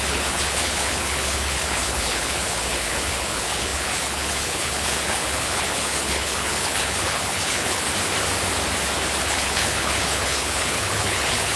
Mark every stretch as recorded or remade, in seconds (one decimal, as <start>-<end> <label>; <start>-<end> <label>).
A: 0.0-7.9 remade; 7.9-9.2 recorded; 9.2-11.6 remade